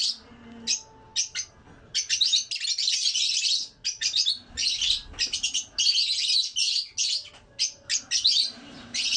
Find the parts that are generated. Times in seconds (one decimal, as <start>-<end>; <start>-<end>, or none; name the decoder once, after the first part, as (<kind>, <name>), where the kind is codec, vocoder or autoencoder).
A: none